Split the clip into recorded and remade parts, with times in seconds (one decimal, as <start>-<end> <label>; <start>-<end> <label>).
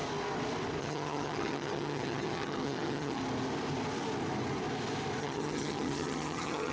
0.0-0.8 recorded; 0.8-3.2 remade; 3.2-5.2 recorded; 5.2-6.7 remade